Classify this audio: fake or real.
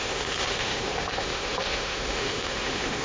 fake